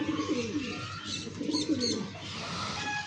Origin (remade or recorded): recorded